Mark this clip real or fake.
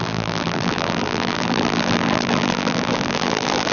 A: fake